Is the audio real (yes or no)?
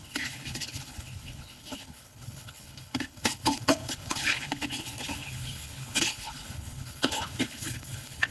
no